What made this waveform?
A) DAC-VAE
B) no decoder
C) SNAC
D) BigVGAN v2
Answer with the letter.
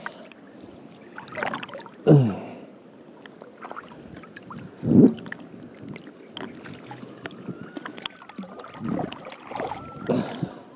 B